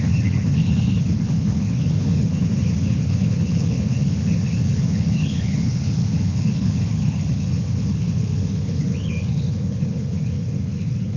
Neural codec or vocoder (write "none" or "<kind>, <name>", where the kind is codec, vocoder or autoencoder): codec, HILCodec